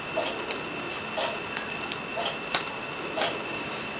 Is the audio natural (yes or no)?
yes